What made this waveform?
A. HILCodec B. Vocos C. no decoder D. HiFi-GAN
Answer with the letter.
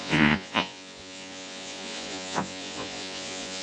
B